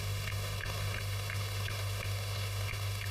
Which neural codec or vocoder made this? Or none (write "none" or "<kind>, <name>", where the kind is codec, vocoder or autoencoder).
autoencoder, DAC-VAE